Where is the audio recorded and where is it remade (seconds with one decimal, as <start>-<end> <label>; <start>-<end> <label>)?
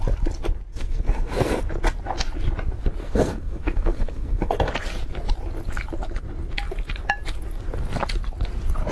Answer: 0.0-0.7 recorded; 0.7-1.6 remade; 1.6-3.0 recorded; 3.0-4.7 remade; 4.7-8.9 recorded